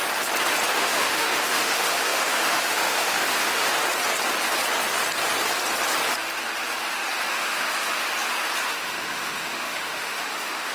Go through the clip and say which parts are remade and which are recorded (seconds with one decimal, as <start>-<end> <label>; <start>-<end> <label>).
0.0-0.7 recorded; 0.7-3.8 remade; 3.8-7.3 recorded; 7.3-8.0 remade; 8.0-8.7 recorded; 8.7-10.7 remade